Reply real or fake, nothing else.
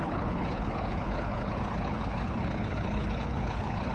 fake